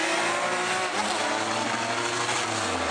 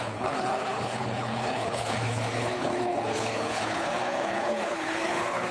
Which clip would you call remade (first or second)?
second